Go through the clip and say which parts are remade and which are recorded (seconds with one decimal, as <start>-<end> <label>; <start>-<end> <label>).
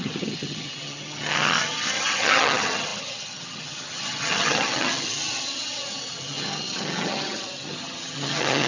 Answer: 0.0-8.7 remade